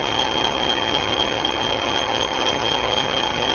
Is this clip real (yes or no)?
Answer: no